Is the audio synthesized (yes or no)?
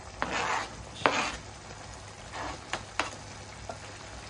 no